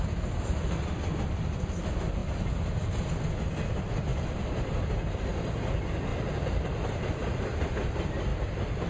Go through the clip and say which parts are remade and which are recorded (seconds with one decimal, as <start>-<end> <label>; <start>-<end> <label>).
0.0-4.1 recorded; 4.1-5.0 remade; 5.0-6.1 recorded; 6.1-7.7 remade; 7.7-8.9 recorded